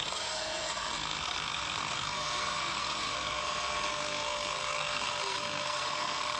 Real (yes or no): no